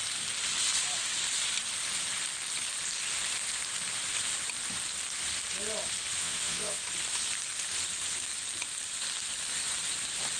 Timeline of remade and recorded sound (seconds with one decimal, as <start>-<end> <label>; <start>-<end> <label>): 0.0-6.2 recorded; 6.2-6.8 remade; 6.8-10.4 recorded